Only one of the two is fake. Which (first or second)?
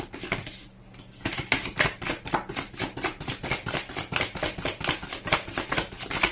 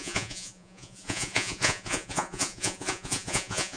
second